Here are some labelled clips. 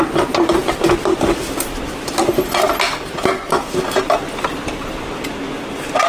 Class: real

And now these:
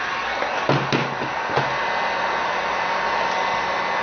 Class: real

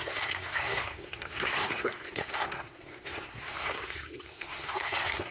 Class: fake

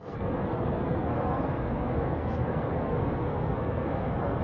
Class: fake